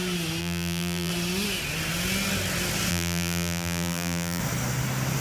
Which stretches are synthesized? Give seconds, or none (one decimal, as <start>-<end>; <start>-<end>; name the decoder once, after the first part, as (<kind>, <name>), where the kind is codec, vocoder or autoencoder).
0.4-1.1 (vocoder, BigVGAN v2); 2.9-4.4